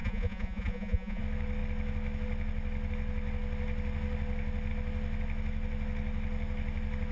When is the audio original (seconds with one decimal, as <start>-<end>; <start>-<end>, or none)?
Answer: 1.2-7.1